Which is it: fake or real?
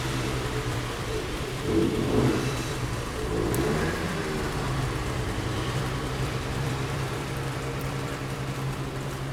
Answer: fake